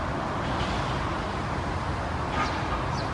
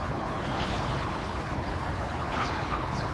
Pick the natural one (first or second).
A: first